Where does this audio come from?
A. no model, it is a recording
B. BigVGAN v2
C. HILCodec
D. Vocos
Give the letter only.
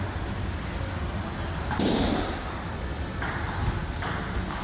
A